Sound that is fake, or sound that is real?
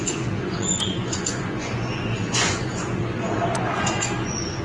fake